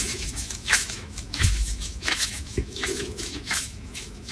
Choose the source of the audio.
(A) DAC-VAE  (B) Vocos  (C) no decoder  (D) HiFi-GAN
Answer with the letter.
A